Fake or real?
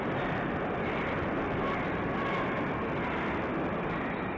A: real